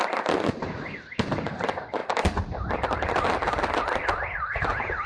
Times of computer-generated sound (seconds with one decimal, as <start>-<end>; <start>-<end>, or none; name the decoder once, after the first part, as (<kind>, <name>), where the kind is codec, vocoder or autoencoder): none